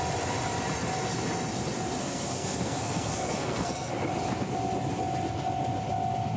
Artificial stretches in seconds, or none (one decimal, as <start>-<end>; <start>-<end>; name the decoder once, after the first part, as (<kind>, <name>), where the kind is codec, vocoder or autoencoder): 2.0-3.9 (codec, SNAC)